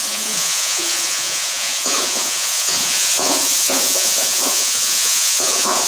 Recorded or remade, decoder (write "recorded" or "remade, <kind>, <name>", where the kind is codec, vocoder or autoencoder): remade, vocoder, Vocos